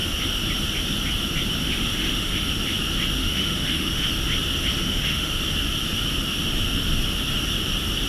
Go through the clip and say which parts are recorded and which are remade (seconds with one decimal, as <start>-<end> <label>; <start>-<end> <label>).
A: 0.0-1.6 recorded; 1.6-2.5 remade; 2.5-3.2 recorded; 3.2-4.1 remade; 4.1-4.8 recorded; 4.8-5.3 remade; 5.3-8.1 recorded